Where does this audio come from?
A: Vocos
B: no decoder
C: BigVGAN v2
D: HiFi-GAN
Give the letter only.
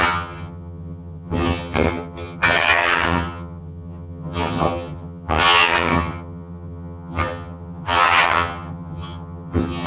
D